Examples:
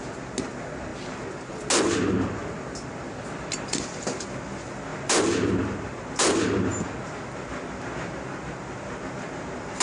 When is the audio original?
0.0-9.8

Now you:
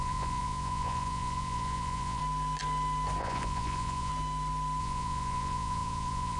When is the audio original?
2.2-3.2; 4.1-4.8

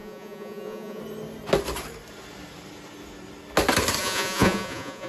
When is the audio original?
1.0-4.0

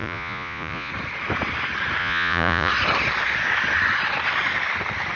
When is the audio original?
0.9-2.0; 2.7-5.2

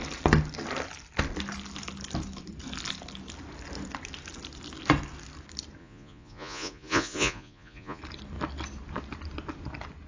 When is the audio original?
0.0-5.8; 8.0-10.1

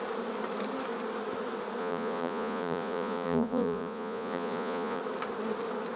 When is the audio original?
0.0-1.8; 5.0-6.0

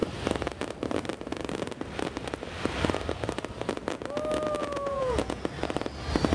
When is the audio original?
0.0-4.6; 5.4-6.3

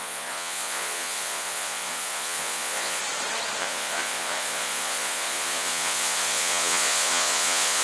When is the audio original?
3.0-3.6